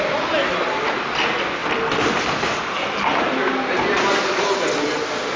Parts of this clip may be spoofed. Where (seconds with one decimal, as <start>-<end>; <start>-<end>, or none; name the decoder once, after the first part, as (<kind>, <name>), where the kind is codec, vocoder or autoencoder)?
none